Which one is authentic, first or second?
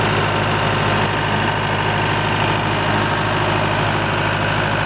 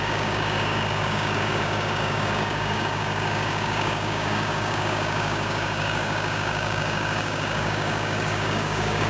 first